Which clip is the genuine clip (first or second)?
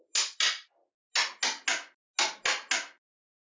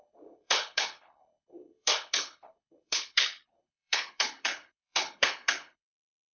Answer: first